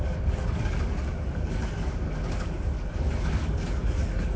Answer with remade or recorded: remade